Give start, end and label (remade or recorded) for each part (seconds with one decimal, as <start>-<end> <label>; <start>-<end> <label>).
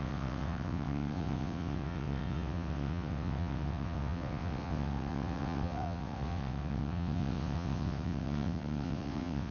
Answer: 0.0-9.5 remade